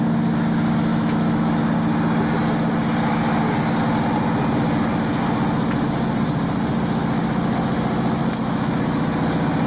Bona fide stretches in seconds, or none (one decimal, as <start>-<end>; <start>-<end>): 0.0-0.9; 1.6-8.2; 8.8-9.7